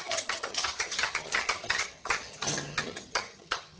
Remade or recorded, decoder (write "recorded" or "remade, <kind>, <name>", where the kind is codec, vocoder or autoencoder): remade, vocoder, HiFi-GAN